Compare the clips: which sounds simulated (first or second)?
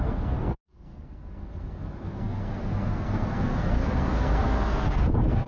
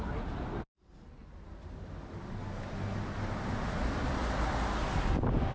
first